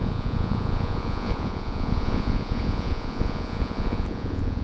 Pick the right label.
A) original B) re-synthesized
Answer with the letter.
B